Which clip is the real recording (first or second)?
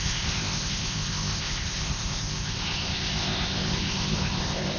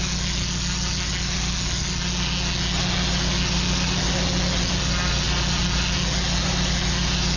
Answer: second